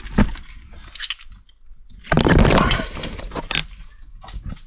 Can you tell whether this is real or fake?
real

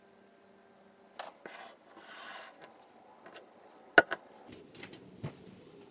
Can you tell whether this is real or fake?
real